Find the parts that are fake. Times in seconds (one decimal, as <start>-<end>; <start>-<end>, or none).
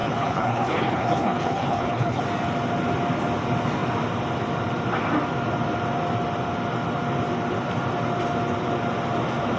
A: 0.0-2.2